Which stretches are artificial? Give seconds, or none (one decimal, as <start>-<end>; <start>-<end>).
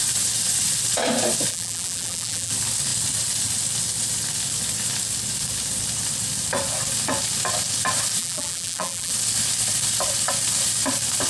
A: 1.5-2.5; 8.2-9.1